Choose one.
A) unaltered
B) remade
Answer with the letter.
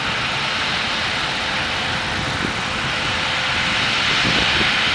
A